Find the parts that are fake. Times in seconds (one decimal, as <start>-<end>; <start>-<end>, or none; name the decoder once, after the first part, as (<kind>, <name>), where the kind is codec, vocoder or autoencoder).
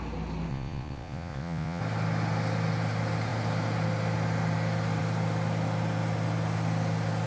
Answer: 0.5-1.8 (vocoder, Vocos)